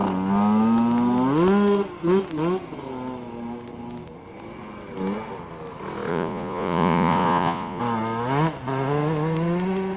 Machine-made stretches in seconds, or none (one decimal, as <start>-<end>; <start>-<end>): 6.1-7.8